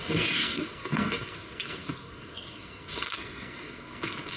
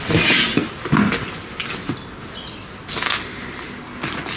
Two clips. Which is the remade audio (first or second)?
first